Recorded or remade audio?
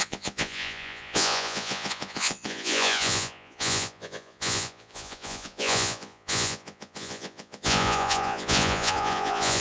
remade